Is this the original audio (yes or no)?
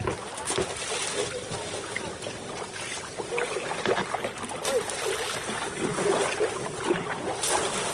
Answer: yes